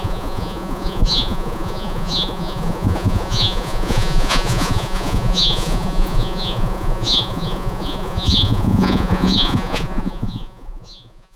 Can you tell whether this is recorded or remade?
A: remade